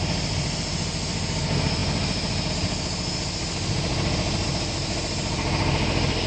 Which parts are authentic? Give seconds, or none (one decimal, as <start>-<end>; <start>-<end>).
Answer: 0.0-6.3